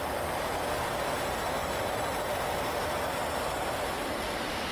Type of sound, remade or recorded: recorded